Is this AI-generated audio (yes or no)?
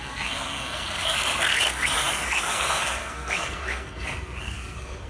yes